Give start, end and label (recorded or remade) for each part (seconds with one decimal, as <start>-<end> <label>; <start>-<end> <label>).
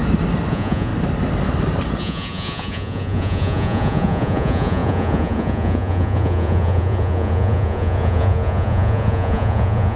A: 0.0-0.5 recorded; 0.5-0.9 remade; 0.9-2.0 recorded; 2.0-10.0 remade